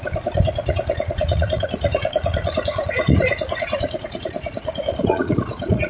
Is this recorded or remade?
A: remade